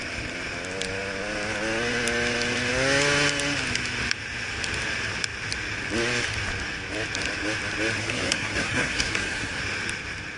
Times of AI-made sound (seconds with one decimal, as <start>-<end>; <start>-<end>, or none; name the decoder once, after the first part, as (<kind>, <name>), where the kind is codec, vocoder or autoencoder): 8.0-9.6 (codec, SNAC)